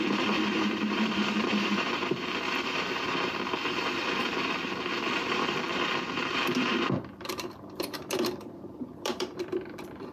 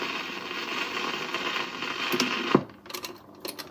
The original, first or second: second